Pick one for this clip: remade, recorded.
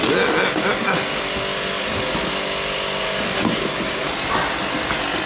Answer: recorded